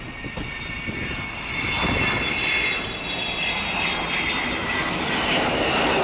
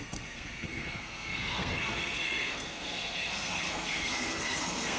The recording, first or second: first